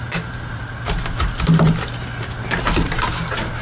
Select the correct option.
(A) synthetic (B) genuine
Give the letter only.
B